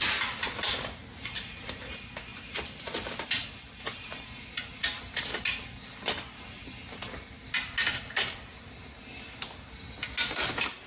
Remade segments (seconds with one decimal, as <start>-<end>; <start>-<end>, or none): 2.3-3.5